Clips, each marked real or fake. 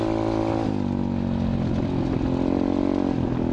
real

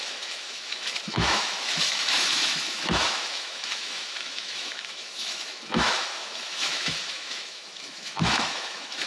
fake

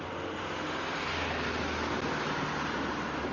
real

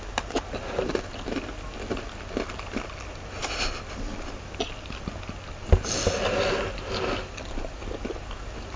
real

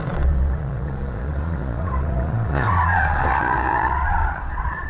fake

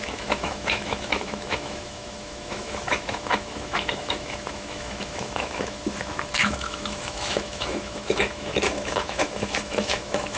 fake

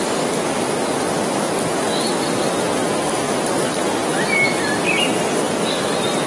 real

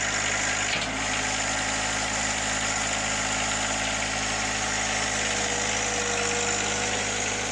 real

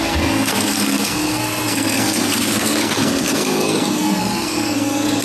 fake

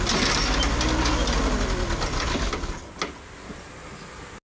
real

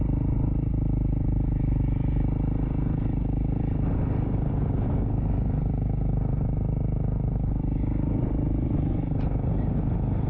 real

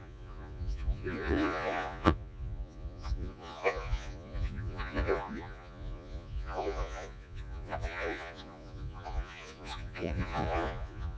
fake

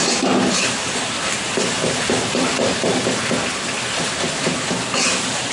real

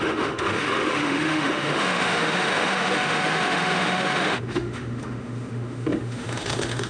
fake